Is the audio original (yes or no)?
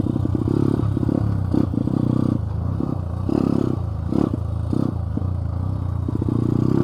yes